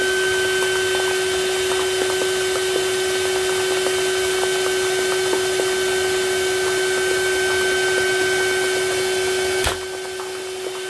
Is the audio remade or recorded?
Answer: recorded